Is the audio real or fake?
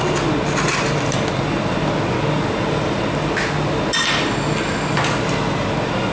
real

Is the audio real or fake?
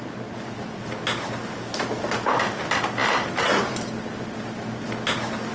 real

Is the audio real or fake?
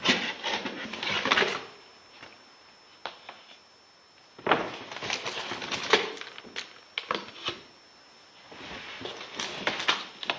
real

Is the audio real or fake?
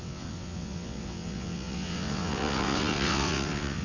fake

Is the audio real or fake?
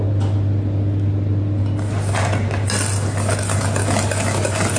real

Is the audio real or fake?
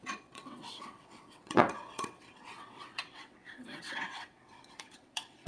fake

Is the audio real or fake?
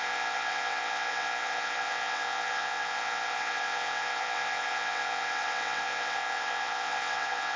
fake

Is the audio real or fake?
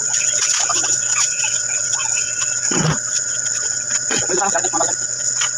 fake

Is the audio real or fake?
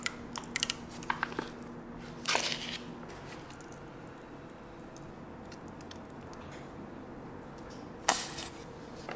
real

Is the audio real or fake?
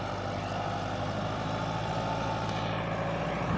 real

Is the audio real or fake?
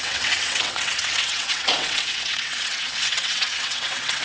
fake